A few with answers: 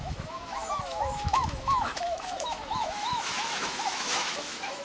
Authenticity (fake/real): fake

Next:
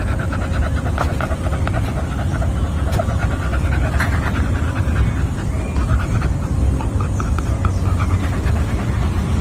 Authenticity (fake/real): real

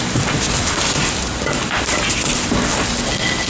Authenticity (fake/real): real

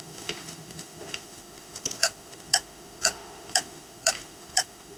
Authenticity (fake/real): fake